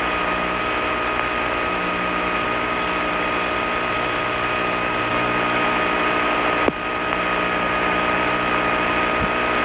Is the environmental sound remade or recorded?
recorded